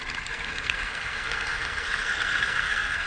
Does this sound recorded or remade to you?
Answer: remade